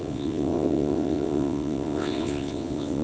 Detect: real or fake fake